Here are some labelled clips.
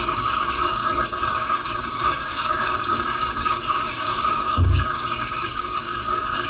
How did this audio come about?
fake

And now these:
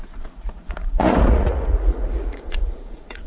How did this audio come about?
fake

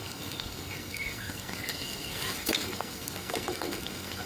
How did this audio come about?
fake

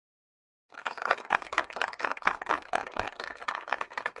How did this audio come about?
fake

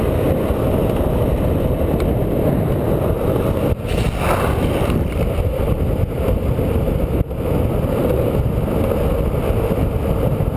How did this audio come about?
real